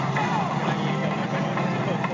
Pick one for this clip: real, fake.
real